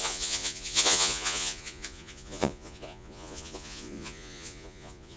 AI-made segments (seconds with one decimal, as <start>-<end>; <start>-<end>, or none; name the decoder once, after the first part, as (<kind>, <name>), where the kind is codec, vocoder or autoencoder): 0.0-5.2 (vocoder, Vocos)